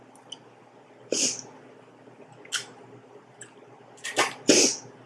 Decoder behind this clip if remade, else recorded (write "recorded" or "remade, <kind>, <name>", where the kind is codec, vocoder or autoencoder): recorded